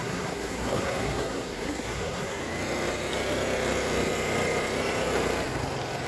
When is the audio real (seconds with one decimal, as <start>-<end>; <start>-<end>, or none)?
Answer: 2.4-6.1

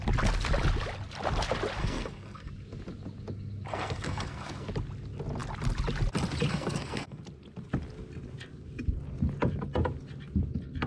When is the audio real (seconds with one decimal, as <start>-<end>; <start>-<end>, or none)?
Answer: 0.0-1.8; 2.5-3.7; 4.7-6.5; 7.2-10.9

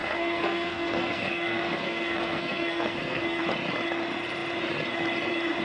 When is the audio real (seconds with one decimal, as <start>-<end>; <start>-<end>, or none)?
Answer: 3.4-5.6

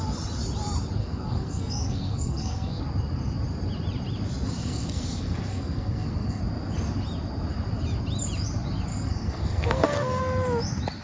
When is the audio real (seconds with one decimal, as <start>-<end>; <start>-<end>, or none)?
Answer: 0.0-1.0; 2.8-4.6; 6.4-8.9; 10.2-11.0

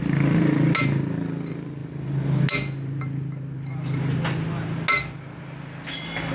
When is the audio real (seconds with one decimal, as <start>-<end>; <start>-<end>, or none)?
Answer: 0.0-6.3